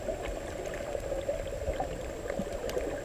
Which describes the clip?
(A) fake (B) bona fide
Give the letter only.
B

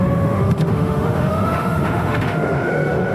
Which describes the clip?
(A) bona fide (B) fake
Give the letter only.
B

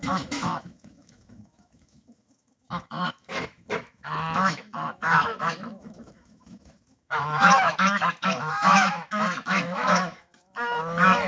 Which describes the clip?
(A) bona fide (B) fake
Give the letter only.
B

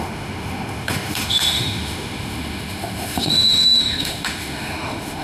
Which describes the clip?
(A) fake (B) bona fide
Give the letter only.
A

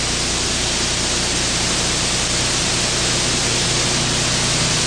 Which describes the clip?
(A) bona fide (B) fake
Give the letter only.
A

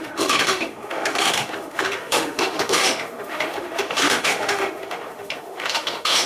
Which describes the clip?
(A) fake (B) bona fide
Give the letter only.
A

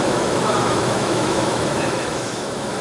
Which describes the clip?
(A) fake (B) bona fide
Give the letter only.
A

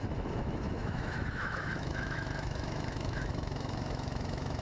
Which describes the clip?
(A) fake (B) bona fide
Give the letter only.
A